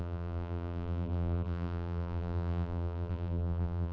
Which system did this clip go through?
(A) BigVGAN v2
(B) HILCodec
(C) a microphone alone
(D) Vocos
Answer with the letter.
A